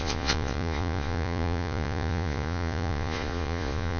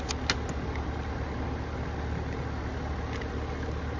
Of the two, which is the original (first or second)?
second